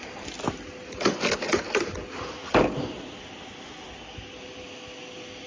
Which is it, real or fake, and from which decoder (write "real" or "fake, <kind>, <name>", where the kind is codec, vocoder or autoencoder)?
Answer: real